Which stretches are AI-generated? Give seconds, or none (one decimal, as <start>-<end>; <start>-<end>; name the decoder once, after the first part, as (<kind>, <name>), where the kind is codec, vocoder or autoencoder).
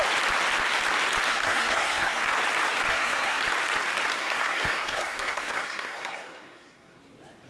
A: 1.3-2.2 (codec, SNAC); 2.9-3.4; 4.2-7.0